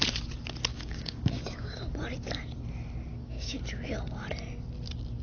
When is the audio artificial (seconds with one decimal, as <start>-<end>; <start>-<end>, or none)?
0.7-1.9; 3.1-3.6